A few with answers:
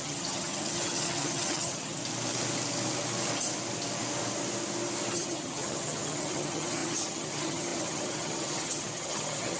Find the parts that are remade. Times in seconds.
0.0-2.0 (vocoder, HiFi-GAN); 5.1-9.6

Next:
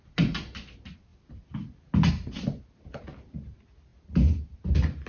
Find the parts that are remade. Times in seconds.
none

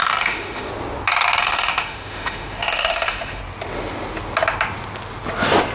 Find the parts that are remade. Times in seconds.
0.0-0.7 (autoencoder, DAC-VAE); 1.4-3.4

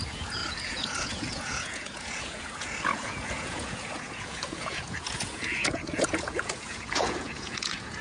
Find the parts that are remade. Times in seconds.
0.0-8.0 (vocoder, Vocos)

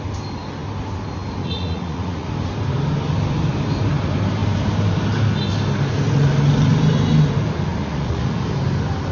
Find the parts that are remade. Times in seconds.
1.4-2.3 (vocoder, Vocos); 7.8-8.4